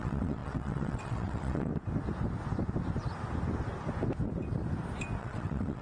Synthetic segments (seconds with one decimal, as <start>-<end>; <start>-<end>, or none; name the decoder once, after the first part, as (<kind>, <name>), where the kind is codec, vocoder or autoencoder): 0.0-1.7 (vocoder, WaveNeXt); 5.2-5.8